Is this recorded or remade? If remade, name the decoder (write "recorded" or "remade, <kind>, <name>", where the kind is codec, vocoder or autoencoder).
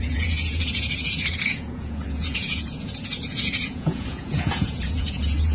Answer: remade, vocoder, Vocos